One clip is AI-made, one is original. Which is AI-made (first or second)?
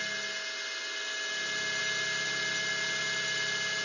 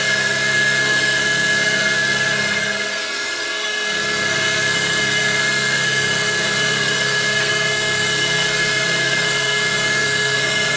second